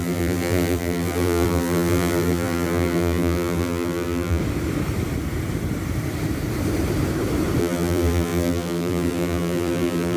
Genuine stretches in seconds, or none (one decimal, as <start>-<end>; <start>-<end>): 4.4-7.6